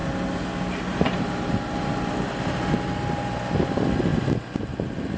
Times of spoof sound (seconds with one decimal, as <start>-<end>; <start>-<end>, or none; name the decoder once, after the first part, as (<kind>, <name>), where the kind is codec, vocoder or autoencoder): 3.1-5.2 (vocoder, BigVGAN v2)